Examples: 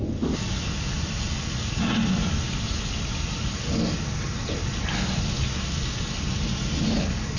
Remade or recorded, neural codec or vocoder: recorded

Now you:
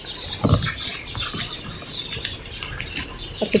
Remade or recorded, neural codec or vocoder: recorded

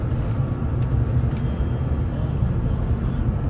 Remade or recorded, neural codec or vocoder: recorded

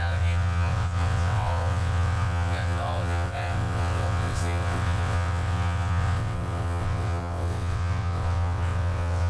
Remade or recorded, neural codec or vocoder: remade, vocoder, WaveNeXt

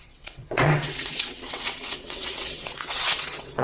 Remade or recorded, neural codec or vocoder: remade, vocoder, WaveNeXt